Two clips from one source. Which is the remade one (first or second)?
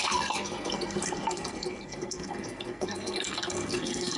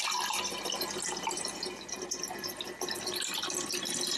first